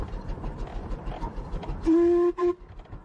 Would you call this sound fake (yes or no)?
no